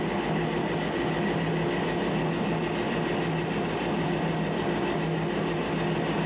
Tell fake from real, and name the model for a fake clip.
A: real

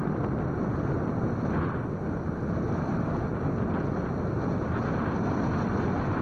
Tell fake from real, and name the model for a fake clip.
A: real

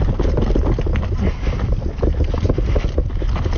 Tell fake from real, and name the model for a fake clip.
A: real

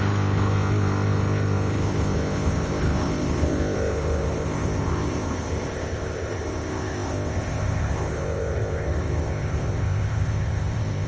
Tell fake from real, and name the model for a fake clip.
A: fake, codec, ZipCodec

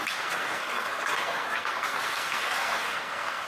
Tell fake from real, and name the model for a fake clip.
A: fake, codec, SNAC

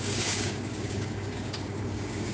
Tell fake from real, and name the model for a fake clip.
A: fake, codec, DAC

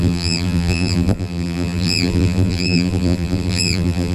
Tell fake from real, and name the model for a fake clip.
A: fake, vocoder, BigVGAN v2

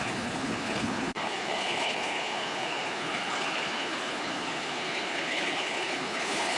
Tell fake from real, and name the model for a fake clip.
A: fake, codec, HILCodec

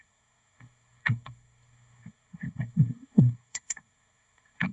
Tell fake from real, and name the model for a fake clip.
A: fake, codec, SNAC